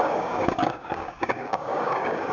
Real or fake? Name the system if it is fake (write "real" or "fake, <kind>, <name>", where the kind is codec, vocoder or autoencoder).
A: fake, codec, DAC